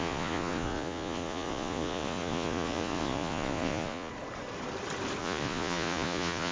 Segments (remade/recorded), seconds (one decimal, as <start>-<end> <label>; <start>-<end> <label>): 0.0-4.1 remade; 4.1-5.2 recorded; 5.2-6.5 remade

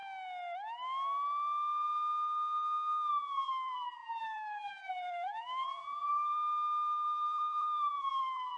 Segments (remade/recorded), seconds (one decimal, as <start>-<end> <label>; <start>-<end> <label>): 0.0-3.1 recorded; 3.1-8.6 remade

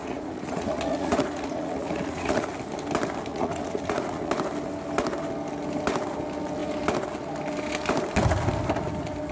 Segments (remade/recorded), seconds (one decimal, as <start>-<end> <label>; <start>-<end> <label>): 0.0-2.5 remade; 2.5-3.3 recorded; 3.3-4.3 remade; 4.3-9.3 recorded

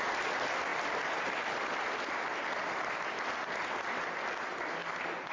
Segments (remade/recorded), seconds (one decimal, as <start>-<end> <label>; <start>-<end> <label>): 0.0-0.7 recorded; 0.7-3.6 remade; 3.6-5.3 recorded

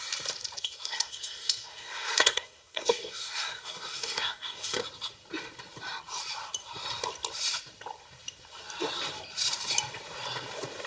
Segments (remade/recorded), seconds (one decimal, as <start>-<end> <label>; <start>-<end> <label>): 0.0-0.6 recorded; 0.6-4.8 remade; 4.8-10.9 recorded

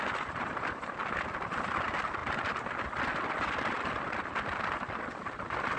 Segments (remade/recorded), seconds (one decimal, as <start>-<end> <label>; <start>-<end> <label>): 0.0-5.8 recorded

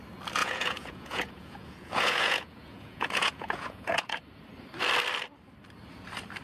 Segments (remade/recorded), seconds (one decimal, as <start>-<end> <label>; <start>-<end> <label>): 0.0-0.4 recorded; 0.4-4.2 remade; 4.2-6.4 recorded